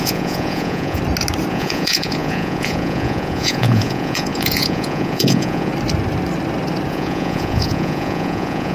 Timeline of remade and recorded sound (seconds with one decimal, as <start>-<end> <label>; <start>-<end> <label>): 0.0-1.0 remade; 1.0-1.5 recorded; 1.5-5.7 remade; 5.7-6.9 recorded; 6.9-8.7 remade